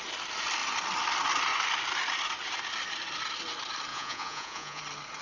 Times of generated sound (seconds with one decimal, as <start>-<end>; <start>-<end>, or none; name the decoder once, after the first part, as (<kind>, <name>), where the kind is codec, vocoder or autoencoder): 3.9-4.8 (vocoder, Vocos)